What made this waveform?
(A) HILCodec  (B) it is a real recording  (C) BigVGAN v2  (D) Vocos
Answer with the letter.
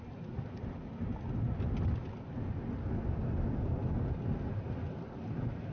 B